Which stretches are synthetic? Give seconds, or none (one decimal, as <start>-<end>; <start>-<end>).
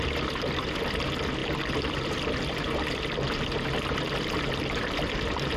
none